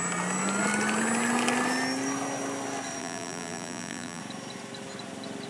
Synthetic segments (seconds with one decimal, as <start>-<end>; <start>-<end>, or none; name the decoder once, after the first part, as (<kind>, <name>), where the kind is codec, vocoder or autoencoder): 3.0-4.2 (vocoder, BigVGAN v2)